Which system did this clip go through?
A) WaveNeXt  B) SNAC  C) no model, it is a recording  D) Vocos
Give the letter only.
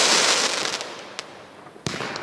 C